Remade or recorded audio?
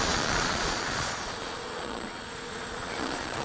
remade